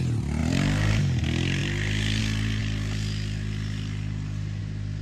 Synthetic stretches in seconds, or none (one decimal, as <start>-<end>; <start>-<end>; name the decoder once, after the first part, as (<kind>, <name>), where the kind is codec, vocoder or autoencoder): 0.4-0.9 (vocoder, BigVGAN v2); 1.6-2.2; 2.6-4.6